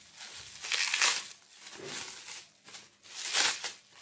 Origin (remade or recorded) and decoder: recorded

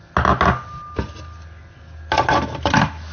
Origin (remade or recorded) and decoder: recorded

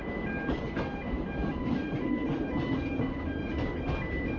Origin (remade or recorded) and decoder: recorded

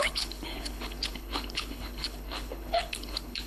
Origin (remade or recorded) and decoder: remade, codec, HILCodec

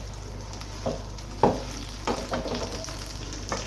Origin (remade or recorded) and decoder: recorded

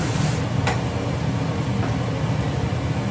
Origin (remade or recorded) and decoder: recorded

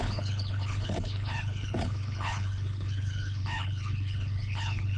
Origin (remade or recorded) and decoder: remade, codec, HILCodec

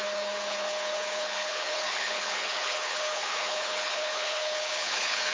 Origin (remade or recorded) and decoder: remade, codec, HILCodec